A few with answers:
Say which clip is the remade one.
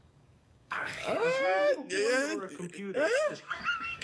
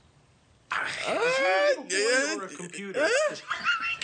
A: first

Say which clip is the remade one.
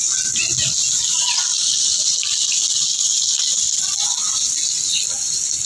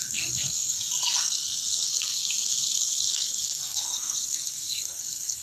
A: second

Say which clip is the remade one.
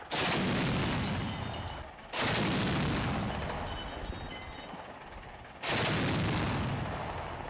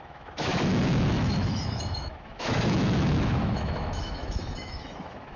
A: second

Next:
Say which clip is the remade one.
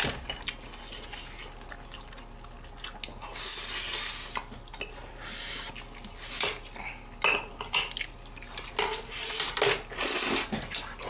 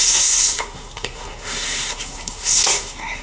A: second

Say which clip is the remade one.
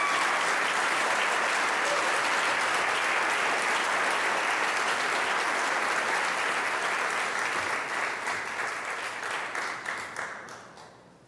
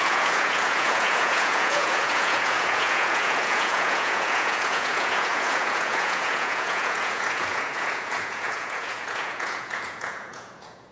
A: second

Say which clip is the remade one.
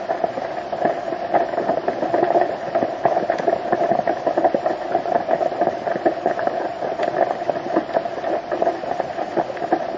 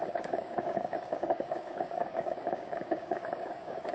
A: second